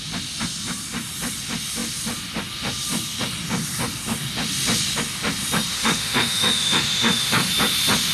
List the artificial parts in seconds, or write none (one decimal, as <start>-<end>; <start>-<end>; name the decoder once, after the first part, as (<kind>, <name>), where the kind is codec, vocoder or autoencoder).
5.7-7.5 (autoencoder, DAC-VAE)